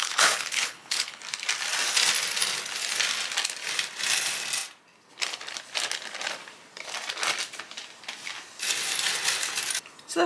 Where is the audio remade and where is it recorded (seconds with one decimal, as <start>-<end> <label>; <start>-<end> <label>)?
0.0-1.2 remade; 1.2-10.3 recorded